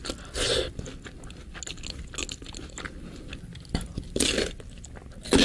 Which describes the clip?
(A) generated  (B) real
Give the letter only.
B